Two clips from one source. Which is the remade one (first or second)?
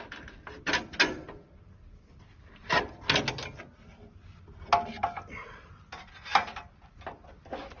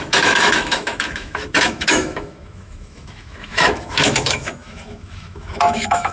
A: second